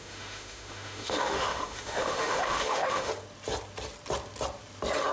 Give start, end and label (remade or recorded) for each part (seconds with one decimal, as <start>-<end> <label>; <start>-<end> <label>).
0.0-3.1 remade; 3.1-5.1 recorded